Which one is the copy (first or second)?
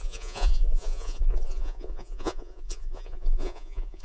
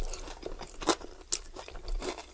first